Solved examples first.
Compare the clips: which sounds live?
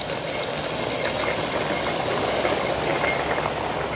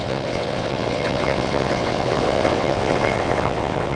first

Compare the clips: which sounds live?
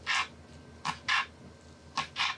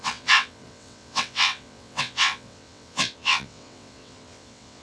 first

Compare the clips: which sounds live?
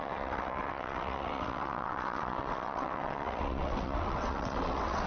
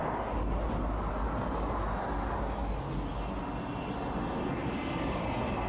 second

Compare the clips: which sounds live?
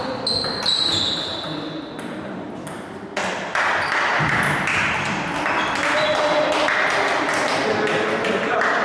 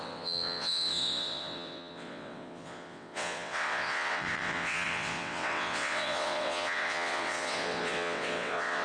first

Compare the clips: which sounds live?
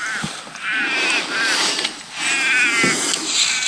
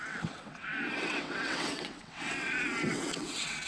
first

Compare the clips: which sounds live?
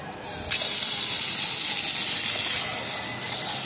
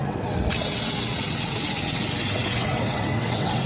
first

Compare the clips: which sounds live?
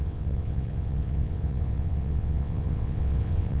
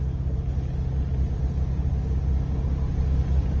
second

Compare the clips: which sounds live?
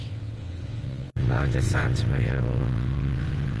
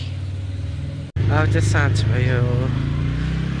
second